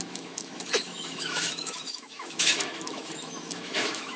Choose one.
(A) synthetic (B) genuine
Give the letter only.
A